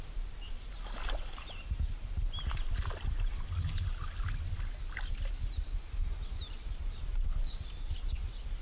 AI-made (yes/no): no